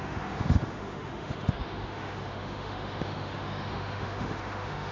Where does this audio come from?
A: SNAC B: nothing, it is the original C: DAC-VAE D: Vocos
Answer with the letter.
C